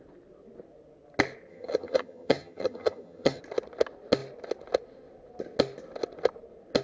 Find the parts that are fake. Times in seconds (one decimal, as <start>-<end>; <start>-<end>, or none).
1.5-3.4